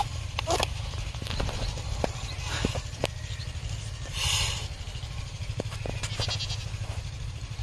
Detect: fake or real real